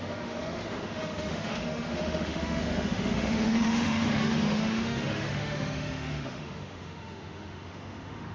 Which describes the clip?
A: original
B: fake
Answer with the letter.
B